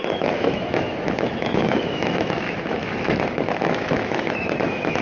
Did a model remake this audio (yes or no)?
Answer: yes